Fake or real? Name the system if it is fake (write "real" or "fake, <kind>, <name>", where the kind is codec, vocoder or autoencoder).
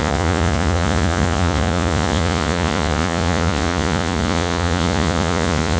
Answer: fake, vocoder, Vocos